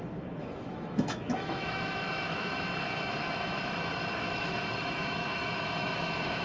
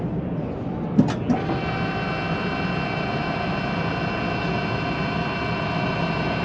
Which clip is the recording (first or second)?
second